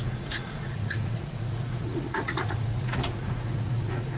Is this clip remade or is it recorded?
remade